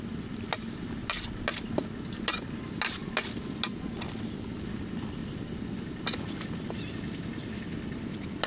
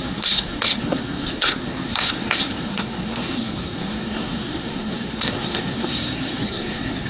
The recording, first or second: first